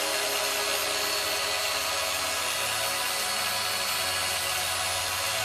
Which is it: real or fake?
real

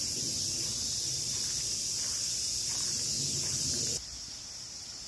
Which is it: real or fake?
real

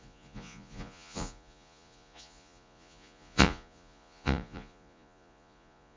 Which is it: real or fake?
fake